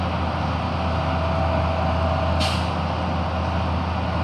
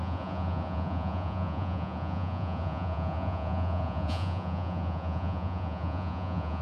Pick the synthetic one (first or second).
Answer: second